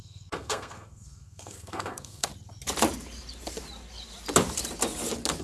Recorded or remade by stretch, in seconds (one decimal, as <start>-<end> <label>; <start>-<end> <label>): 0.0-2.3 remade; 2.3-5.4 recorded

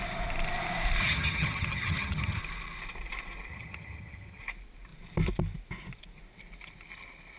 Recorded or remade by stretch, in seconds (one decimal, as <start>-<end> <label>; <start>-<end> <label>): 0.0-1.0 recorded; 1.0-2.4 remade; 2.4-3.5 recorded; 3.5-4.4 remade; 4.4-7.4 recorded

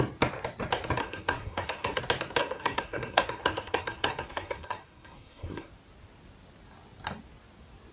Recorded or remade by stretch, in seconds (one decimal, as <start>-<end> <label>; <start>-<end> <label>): 0.0-1.0 recorded; 1.0-2.0 remade; 2.0-2.4 recorded; 2.4-5.7 remade; 5.7-7.9 recorded